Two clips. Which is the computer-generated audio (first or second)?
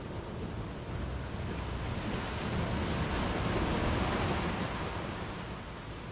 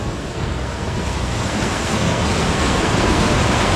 second